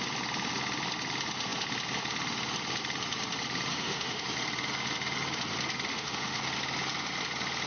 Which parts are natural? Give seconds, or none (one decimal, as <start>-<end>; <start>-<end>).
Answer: 0.0-3.7; 4.2-5.9; 6.4-7.7